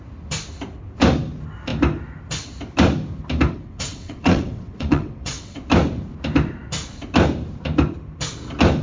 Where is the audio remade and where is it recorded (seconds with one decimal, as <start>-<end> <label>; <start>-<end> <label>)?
0.0-3.5 recorded; 3.5-5.6 remade; 5.6-8.8 recorded